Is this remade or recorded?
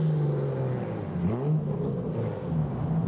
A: recorded